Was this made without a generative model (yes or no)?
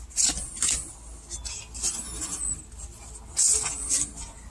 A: yes